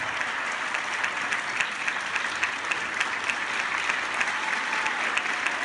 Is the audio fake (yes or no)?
no